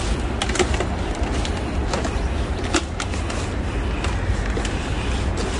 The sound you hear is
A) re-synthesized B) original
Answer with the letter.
B